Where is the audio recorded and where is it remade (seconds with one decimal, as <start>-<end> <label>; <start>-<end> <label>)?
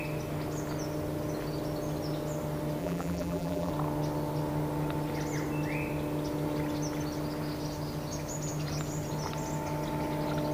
0.0-2.8 recorded; 2.8-3.7 remade; 3.7-10.5 recorded